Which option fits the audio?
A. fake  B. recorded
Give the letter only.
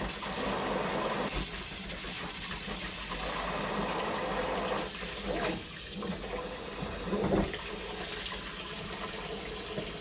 B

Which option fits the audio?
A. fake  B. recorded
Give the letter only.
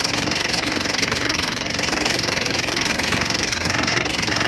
A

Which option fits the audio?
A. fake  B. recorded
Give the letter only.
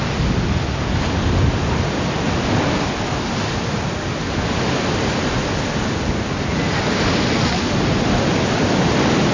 B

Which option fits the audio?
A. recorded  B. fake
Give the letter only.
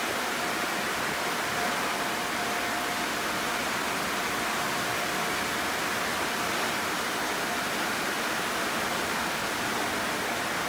A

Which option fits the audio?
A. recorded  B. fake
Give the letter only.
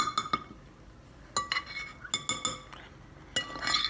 A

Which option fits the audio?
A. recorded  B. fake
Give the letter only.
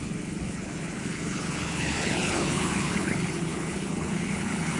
B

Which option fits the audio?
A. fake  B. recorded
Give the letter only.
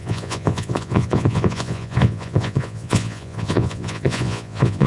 A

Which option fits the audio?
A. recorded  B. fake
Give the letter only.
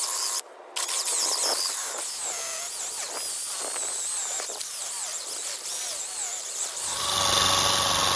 A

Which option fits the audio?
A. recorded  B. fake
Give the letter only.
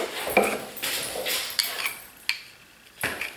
A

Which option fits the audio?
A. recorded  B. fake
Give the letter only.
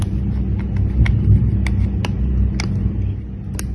A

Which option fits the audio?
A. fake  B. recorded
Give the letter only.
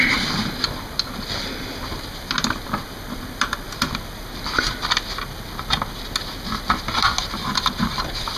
B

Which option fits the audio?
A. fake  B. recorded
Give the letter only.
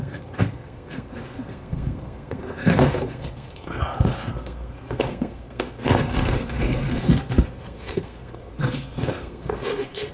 A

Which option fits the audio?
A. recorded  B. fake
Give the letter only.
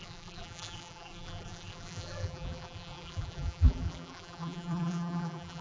B